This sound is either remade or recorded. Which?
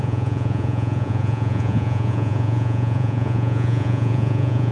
remade